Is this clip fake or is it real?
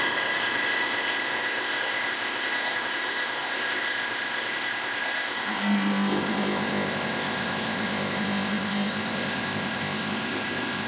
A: fake